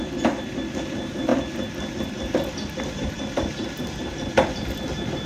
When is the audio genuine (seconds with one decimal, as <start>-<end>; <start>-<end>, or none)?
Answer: 0.0-5.3